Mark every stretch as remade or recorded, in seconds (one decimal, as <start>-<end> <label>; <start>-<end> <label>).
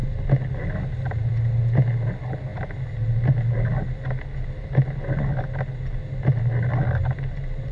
0.0-7.7 recorded